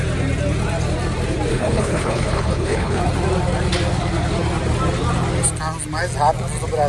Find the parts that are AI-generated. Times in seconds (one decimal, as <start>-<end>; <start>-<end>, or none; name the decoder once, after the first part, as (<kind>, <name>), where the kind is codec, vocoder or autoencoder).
1.5-3.0 (codec, HILCodec)